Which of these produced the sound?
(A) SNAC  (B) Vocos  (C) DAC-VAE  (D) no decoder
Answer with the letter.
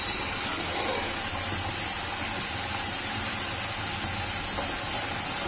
D